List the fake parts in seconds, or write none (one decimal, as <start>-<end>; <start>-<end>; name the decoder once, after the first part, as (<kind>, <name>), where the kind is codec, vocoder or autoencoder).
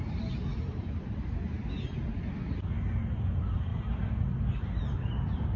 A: 0.5-2.0 (vocoder, BigVGAN v2); 3.7-5.6